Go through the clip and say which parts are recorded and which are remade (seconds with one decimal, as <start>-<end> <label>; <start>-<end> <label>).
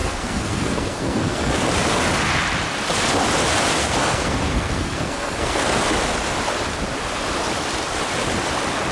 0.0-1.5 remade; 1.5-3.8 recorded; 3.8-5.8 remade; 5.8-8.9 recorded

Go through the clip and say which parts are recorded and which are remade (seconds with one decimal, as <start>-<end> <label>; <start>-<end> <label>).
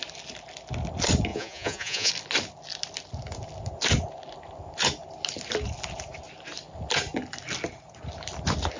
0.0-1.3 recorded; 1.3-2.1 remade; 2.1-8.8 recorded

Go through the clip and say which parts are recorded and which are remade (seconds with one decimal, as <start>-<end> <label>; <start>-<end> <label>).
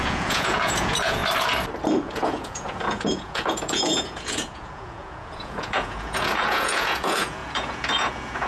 0.0-1.2 remade; 1.2-2.0 recorded; 2.0-8.5 remade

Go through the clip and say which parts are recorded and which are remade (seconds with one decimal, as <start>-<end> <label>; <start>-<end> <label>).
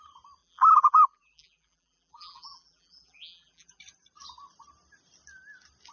0.0-0.4 recorded; 0.4-3.8 remade; 3.8-5.9 recorded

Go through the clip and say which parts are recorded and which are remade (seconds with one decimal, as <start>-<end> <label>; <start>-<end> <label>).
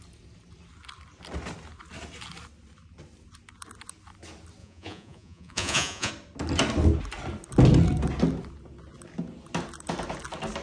0.0-4.6 recorded; 4.6-6.1 remade; 6.1-10.6 recorded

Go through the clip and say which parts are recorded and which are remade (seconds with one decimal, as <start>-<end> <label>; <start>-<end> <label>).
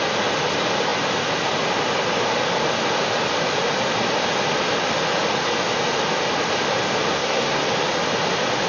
0.0-7.1 recorded; 7.1-7.6 remade; 7.6-8.7 recorded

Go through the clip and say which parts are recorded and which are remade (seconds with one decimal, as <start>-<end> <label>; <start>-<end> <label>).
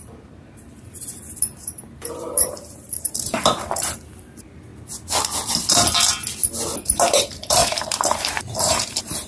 0.0-4.7 remade; 4.7-5.5 recorded; 5.5-6.1 remade; 6.1-6.8 recorded; 6.8-9.3 remade